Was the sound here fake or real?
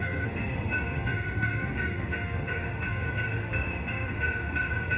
fake